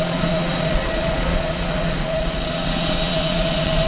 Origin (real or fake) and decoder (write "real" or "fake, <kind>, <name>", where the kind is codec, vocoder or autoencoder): fake, vocoder, Vocos